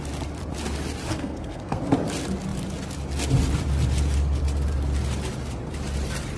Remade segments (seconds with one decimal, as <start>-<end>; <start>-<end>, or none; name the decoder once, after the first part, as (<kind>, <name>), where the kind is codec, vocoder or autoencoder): 1.1-1.8 (codec, SNAC)